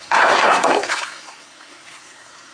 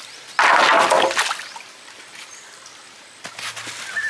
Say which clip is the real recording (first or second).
second